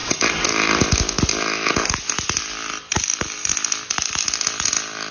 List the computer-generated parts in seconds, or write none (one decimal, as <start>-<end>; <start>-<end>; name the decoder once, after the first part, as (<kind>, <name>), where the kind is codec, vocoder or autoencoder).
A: 2.6-3.5 (vocoder, BigVGAN v2)